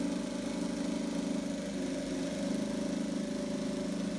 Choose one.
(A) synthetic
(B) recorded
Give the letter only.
B